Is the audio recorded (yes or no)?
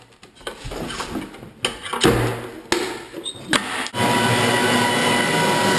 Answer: yes